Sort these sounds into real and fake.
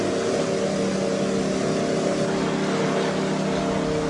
real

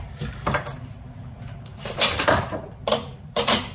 fake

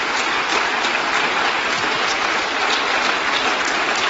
real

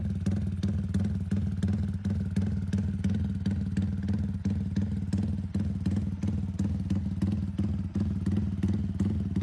real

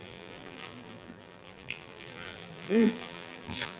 fake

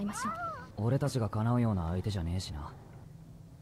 fake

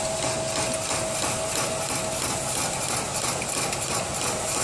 real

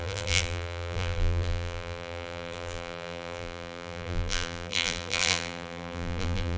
fake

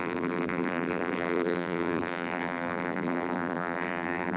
fake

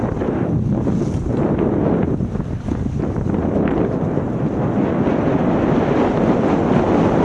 real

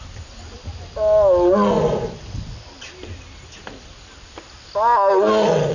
real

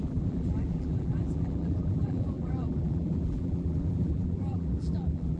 fake